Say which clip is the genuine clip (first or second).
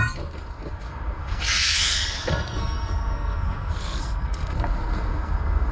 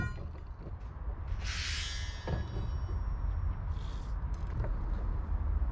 second